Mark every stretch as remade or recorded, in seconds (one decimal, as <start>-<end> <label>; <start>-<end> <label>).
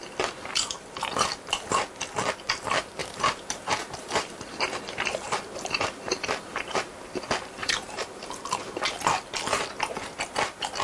0.0-3.0 recorded; 3.0-6.9 remade; 6.9-7.6 recorded; 7.6-9.0 remade; 9.0-10.8 recorded